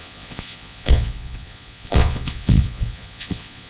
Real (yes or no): no